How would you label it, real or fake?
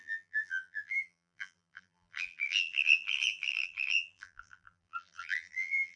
fake